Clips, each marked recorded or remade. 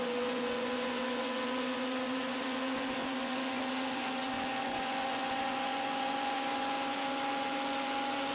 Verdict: remade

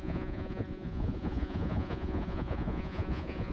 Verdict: remade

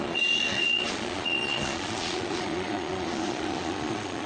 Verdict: remade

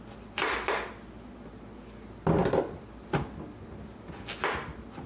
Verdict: recorded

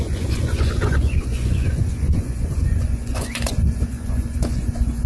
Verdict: remade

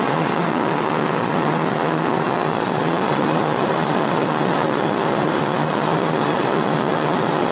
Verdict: remade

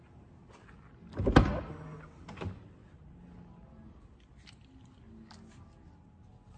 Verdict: recorded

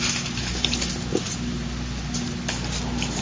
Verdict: recorded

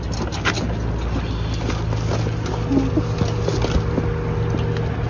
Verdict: recorded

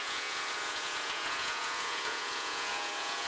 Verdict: remade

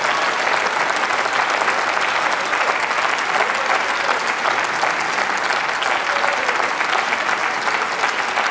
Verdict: recorded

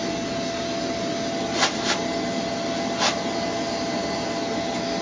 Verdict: recorded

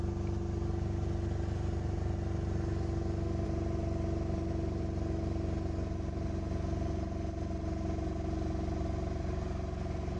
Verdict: recorded